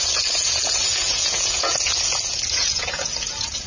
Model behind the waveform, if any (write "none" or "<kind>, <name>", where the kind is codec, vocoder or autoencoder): vocoder, Vocos